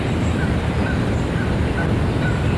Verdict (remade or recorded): recorded